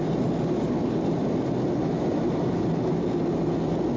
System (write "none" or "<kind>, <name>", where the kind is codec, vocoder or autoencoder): none